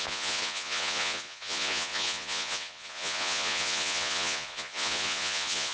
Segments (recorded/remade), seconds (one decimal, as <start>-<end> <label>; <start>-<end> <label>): 0.0-5.7 remade